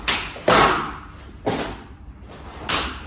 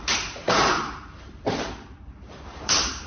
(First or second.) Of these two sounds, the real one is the first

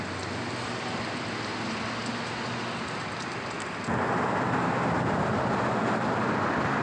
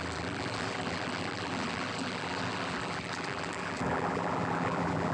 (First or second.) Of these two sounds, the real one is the first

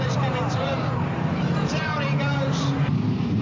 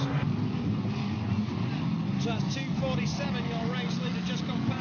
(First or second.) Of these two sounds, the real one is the second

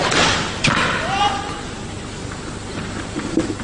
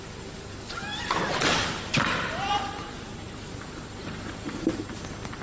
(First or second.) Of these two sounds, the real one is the first